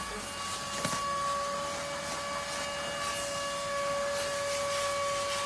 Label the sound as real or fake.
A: real